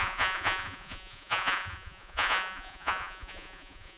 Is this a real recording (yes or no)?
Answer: no